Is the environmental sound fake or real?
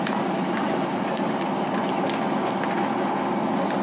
real